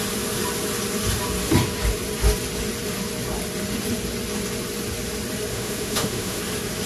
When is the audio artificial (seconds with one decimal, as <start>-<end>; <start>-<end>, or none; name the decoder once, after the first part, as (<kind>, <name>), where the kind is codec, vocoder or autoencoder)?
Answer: 5.5-6.4 (autoencoder, DAC-VAE)